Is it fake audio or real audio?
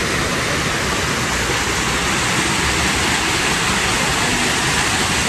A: real